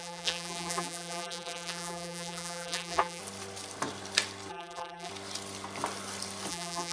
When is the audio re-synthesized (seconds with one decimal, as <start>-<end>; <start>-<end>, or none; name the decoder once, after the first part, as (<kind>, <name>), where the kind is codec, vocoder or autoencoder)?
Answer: 0.0-3.2 (vocoder, BigVGAN v2); 4.5-5.1; 6.5-6.9